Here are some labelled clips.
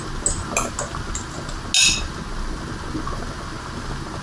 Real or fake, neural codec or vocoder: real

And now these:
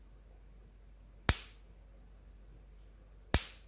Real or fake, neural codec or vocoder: real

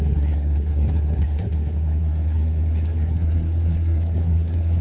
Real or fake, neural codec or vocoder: fake, codec, SNAC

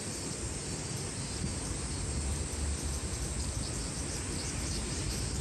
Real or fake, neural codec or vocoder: real